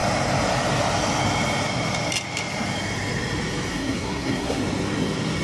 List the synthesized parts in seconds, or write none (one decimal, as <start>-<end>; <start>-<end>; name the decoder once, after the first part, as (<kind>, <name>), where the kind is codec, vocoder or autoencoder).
3.7-4.6 (codec, SNAC)